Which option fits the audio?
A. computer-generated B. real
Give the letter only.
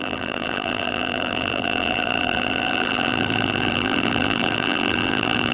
A